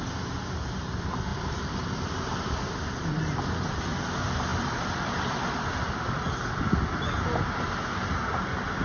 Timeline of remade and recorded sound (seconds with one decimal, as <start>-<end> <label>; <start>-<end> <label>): 0.0-1.3 recorded; 1.3-3.8 remade; 3.8-4.5 recorded; 4.5-7.2 remade; 7.2-8.8 recorded